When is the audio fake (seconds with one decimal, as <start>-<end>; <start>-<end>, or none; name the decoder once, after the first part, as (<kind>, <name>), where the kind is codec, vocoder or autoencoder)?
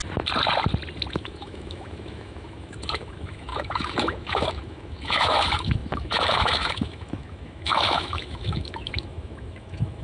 1.1-10.0 (autoencoder, DAC-VAE)